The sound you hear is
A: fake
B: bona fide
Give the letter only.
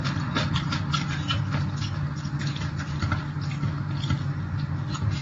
B